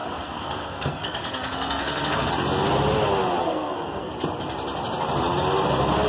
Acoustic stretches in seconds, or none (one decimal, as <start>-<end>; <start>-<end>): 2.3-3.4; 4.1-6.1